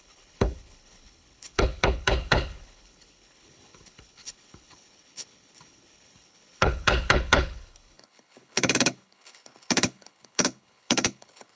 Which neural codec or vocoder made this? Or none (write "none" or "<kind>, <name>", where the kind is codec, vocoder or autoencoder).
codec, HILCodec